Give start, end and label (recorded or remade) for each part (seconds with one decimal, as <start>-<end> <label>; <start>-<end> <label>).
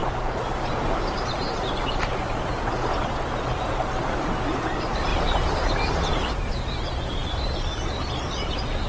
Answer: 0.0-0.7 recorded; 0.7-2.5 remade; 2.5-3.7 recorded; 3.7-5.1 remade; 5.1-6.1 recorded; 6.1-8.9 remade